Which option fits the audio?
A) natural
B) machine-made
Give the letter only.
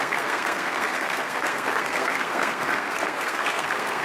B